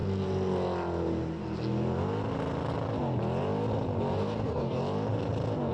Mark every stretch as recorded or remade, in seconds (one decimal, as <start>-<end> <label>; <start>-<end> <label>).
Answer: 0.0-4.1 recorded; 4.1-4.8 remade; 4.8-5.7 recorded